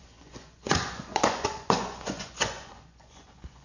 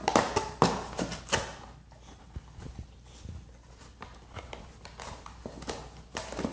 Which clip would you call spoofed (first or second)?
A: first